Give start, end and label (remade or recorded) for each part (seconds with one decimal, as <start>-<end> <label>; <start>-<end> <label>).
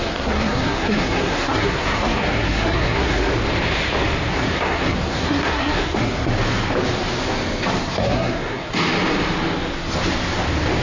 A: 0.0-3.3 remade; 3.3-4.3 recorded; 4.3-6.3 remade; 6.3-7.8 recorded; 7.8-8.7 remade; 8.7-10.8 recorded